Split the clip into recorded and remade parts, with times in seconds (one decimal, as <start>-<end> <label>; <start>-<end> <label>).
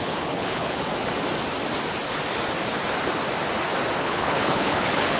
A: 0.0-0.9 remade; 0.9-4.0 recorded; 4.0-5.2 remade